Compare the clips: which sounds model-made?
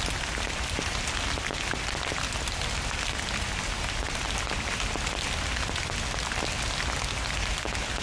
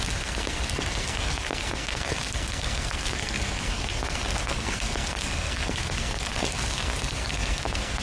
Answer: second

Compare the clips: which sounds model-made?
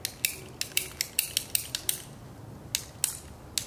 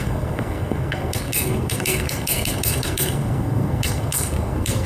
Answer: second